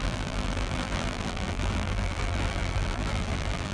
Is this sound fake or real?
fake